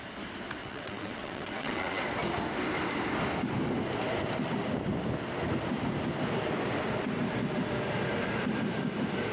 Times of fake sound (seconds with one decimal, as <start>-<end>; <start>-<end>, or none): 0.6-2.0